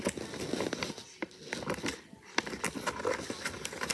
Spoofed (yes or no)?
no